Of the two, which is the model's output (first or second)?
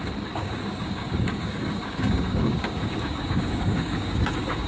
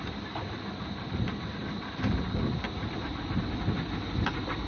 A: first